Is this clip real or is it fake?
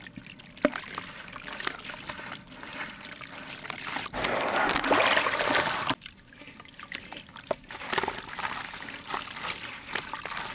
real